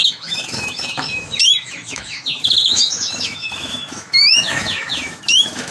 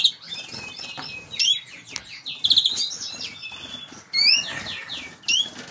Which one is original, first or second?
second